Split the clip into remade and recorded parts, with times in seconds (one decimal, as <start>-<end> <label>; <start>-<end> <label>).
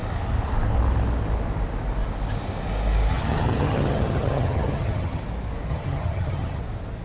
0.0-3.1 recorded; 3.1-5.2 remade; 5.2-5.7 recorded; 5.7-6.6 remade; 6.6-7.0 recorded